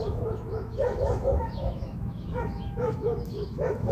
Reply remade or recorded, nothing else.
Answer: remade